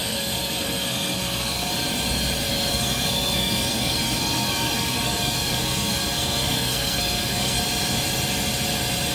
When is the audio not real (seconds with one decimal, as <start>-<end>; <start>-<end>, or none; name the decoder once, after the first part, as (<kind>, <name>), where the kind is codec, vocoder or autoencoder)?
0.0-1.7 (codec, SNAC); 2.7-7.6